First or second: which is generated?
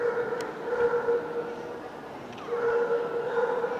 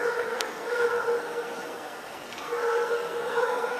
second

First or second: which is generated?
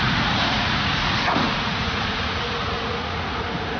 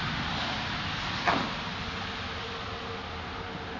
first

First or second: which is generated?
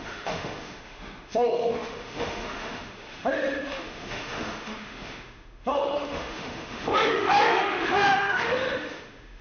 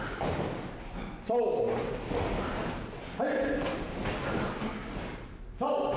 first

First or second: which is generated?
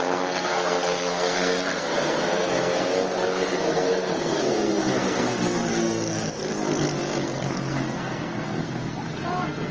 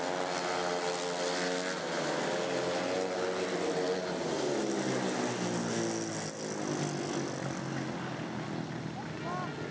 first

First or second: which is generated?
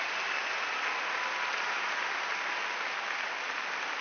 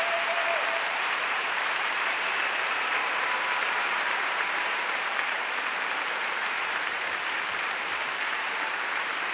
second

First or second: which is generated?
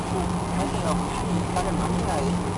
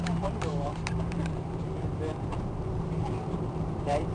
second